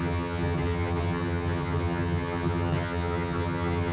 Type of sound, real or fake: fake